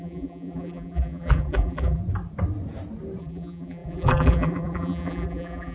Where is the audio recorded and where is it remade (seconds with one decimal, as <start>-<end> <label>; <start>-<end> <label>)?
0.0-2.0 remade; 2.0-3.2 recorded; 3.2-5.7 remade